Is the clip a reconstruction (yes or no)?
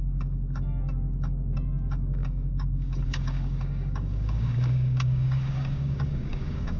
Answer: yes